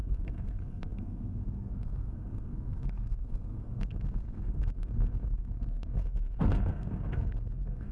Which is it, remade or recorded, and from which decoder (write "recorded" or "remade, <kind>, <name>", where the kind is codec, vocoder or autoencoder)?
remade, codec, SNAC